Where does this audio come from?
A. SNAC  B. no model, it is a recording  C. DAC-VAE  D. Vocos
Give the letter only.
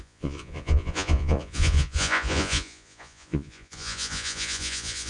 D